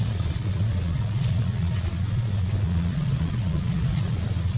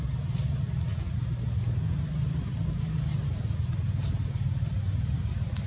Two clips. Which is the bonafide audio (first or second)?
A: second